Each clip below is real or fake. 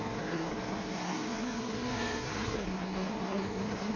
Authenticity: fake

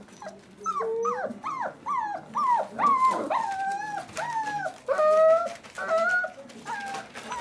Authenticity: real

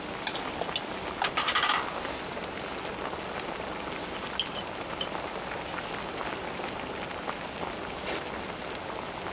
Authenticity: real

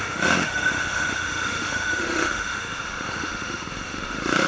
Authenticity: fake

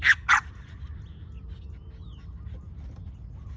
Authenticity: real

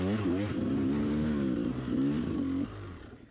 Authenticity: real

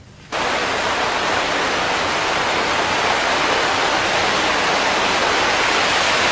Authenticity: real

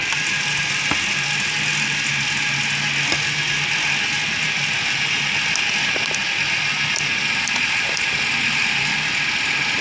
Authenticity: real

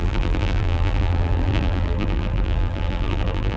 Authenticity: fake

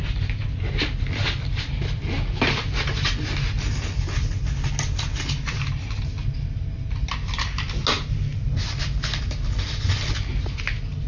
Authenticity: real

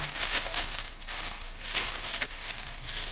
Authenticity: fake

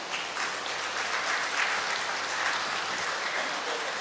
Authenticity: real